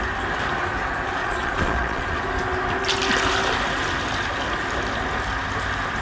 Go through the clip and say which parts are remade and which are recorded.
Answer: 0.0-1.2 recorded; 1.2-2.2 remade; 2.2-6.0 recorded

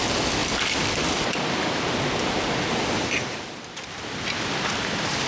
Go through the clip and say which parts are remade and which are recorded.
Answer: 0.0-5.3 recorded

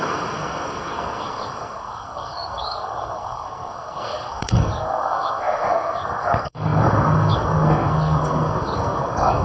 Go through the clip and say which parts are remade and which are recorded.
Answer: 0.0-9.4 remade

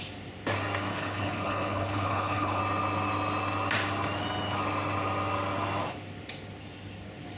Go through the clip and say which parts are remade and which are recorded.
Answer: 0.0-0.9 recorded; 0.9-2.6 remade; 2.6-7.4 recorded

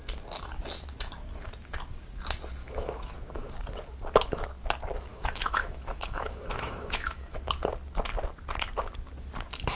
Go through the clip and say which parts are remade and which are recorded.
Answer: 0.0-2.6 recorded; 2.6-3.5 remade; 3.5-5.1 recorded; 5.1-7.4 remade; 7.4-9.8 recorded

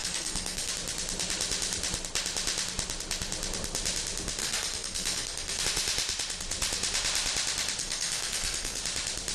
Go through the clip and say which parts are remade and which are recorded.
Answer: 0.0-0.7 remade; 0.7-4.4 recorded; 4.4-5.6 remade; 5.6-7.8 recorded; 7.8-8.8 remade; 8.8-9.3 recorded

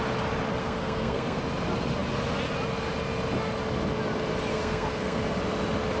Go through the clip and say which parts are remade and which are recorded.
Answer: 0.0-0.6 recorded; 0.6-1.4 remade; 1.4-4.5 recorded; 4.5-5.2 remade; 5.2-6.0 recorded